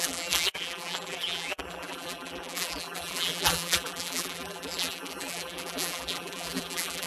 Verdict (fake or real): fake